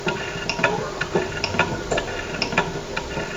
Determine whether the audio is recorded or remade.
recorded